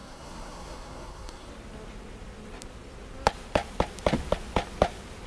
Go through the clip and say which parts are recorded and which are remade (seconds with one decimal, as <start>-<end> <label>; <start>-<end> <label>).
0.0-1.5 remade; 1.5-5.3 recorded